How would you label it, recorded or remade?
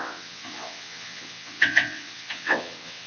remade